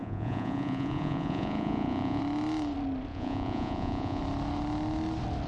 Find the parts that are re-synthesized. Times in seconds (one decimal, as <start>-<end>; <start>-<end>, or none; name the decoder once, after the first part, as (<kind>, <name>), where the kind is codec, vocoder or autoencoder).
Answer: 0.0-2.2 (vocoder, Vocos); 3.1-4.2